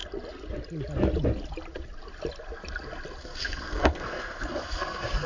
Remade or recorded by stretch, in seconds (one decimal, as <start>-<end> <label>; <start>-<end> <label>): 0.0-3.2 recorded; 3.2-5.3 remade